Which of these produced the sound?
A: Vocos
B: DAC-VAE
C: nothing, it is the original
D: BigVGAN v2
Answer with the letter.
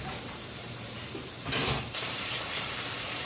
D